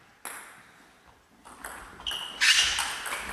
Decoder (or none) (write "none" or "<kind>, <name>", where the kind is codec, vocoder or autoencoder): none